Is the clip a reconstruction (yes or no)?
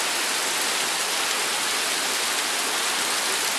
no